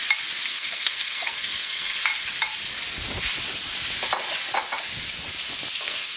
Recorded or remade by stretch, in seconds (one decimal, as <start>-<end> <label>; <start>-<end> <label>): 0.0-0.5 recorded; 0.5-2.1 remade; 2.1-5.8 recorded; 5.8-6.2 remade